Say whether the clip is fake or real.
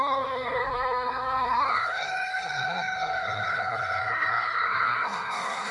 fake